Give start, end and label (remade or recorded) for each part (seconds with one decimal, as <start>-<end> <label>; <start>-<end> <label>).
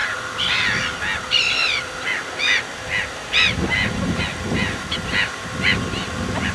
0.0-6.5 recorded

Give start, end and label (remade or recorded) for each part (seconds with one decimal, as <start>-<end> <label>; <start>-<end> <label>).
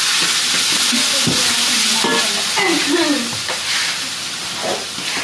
0.0-5.2 recorded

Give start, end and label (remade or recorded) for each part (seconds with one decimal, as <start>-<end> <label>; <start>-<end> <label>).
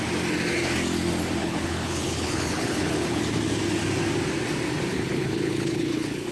0.0-1.4 recorded; 1.4-3.2 remade; 3.2-4.9 recorded; 4.9-6.3 remade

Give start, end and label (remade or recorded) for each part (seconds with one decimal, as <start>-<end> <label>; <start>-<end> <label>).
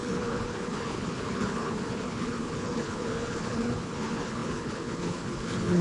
0.0-5.8 remade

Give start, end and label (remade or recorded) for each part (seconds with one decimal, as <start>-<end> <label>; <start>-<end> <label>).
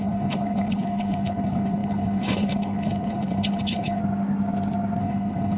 0.0-4.0 remade; 4.0-5.0 recorded; 5.0-5.6 remade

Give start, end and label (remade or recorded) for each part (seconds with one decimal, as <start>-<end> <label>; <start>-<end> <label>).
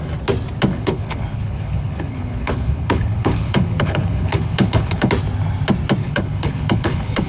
0.0-0.7 recorded; 0.7-5.1 remade; 5.1-6.0 recorded; 6.0-7.3 remade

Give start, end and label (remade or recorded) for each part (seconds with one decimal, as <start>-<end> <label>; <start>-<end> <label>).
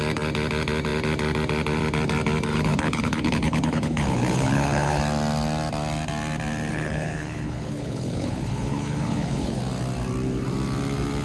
0.0-2.5 recorded; 2.5-5.0 remade; 5.0-6.7 recorded; 6.7-9.6 remade; 9.6-11.2 recorded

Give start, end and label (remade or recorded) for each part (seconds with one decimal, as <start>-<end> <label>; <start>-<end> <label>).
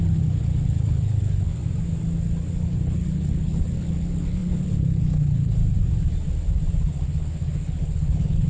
0.0-1.6 remade; 1.6-2.5 recorded; 2.5-5.6 remade; 5.6-6.9 recorded; 6.9-8.5 remade